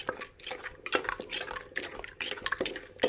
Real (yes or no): yes